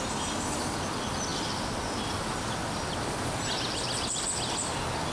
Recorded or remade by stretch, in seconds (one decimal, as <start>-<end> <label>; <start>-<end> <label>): 0.0-5.1 recorded